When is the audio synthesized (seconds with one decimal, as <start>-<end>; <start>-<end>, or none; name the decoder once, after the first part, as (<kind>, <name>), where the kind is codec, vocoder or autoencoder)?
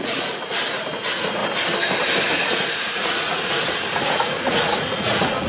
0.0-1.4 (vocoder, Vocos); 2.4-5.5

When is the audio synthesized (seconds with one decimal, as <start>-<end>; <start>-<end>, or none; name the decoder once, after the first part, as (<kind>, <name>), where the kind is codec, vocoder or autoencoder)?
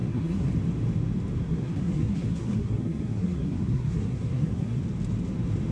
0.0-0.5 (codec, SNAC); 1.4-4.8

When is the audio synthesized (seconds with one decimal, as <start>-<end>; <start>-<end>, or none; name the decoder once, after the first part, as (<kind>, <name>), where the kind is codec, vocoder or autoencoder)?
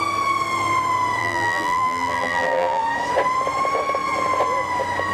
1.2-2.8 (vocoder, BigVGAN v2)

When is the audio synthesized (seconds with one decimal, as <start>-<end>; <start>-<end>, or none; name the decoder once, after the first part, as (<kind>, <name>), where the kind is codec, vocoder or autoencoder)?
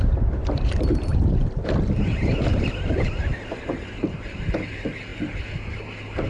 1.1-1.7 (vocoder, BigVGAN v2); 2.5-4.6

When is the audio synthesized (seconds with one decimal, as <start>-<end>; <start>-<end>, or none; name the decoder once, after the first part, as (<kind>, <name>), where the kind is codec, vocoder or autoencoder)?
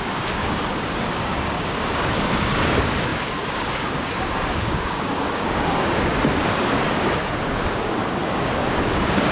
0.0-9.3 (codec, DAC)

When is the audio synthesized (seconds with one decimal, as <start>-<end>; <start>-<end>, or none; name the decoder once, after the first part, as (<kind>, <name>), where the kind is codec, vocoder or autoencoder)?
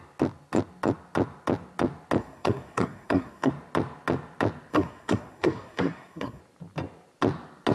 2.2-3.5 (codec, SNAC); 4.7-6.4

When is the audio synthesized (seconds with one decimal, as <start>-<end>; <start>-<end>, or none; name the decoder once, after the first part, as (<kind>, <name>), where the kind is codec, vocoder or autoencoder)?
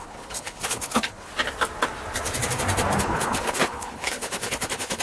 0.0-1.3 (codec, HILCodec); 3.0-5.0